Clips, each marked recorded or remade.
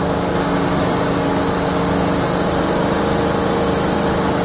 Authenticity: recorded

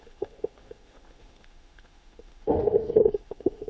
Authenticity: remade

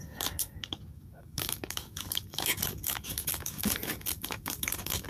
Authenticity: remade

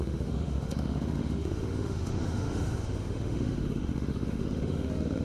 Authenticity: remade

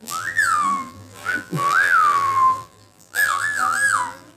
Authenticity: remade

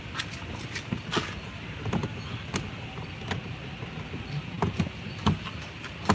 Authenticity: recorded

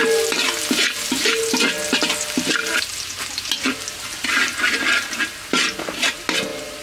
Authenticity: recorded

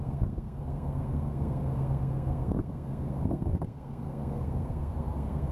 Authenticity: remade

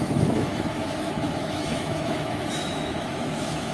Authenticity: remade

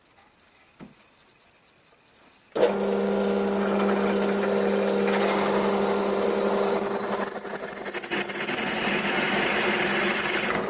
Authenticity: recorded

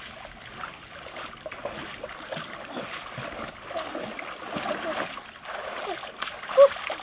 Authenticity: recorded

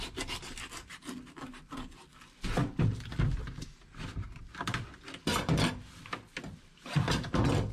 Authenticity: recorded